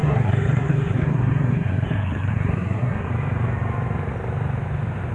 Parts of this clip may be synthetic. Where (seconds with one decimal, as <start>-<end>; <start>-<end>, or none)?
0.0-3.1